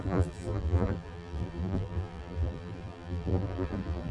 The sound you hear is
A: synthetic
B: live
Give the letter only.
A